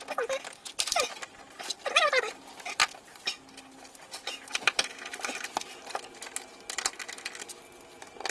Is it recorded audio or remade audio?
recorded